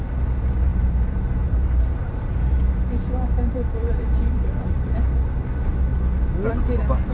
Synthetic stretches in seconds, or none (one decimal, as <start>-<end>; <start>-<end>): 0.7-5.0

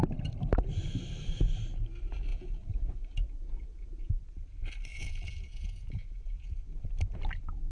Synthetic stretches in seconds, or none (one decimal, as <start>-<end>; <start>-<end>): 2.3-4.1; 4.9-6.8

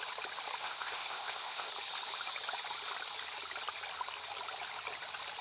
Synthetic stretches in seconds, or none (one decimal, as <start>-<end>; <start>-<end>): 0.6-1.7

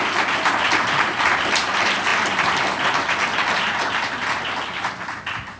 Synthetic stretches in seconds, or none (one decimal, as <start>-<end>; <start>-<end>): none

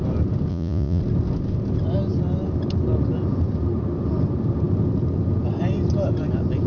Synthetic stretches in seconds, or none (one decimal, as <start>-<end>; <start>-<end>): 0.5-1.0

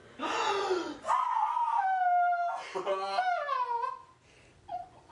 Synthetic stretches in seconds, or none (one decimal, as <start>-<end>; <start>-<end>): 0.0-1.6; 4.6-5.1